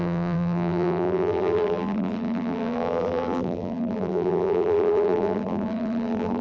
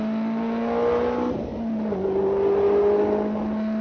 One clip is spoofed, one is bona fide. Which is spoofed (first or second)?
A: first